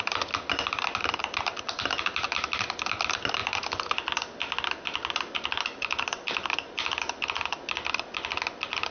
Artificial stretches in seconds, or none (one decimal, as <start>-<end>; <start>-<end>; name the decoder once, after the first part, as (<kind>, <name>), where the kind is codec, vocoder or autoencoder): none

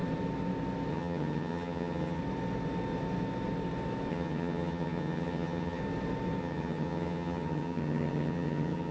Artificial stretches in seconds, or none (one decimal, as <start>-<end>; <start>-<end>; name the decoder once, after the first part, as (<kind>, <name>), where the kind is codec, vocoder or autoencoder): 0.9-2.2 (vocoder, HiFi-GAN); 4.1-5.8; 6.4-8.9